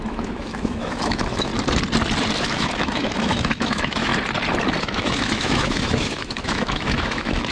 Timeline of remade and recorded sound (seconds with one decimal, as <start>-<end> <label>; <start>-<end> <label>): 0.0-1.5 remade; 1.5-2.4 recorded; 2.4-4.1 remade; 4.1-4.8 recorded; 4.8-7.5 remade